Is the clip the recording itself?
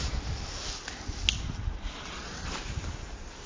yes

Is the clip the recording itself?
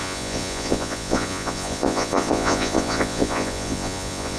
no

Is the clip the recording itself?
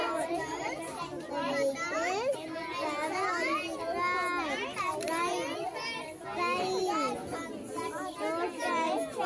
yes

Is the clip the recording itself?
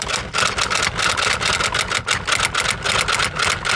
yes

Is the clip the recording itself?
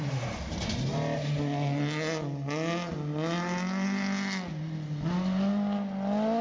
yes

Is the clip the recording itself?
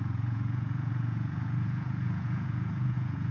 no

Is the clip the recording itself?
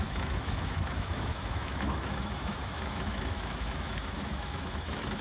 no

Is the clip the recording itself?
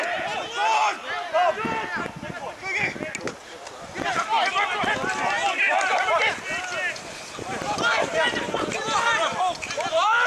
yes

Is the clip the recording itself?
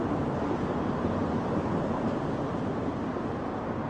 yes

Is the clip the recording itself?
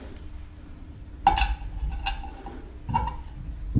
yes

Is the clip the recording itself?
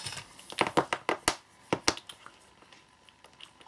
yes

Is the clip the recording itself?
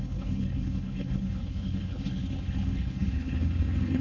no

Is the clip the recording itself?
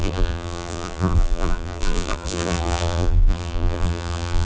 no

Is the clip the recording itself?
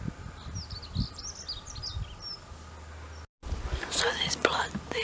yes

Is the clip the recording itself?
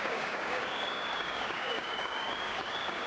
no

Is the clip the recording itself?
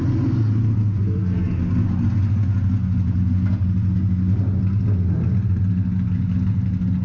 yes